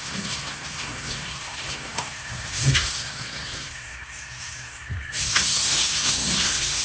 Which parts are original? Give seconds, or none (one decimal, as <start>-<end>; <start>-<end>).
none